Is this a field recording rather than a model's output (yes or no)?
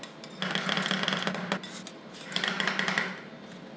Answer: yes